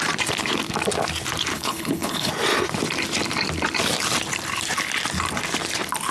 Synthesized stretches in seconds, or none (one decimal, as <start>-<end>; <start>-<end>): 1.5-2.3